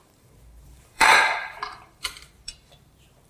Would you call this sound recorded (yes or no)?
no